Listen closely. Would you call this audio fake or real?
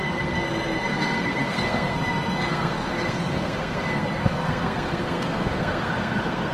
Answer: fake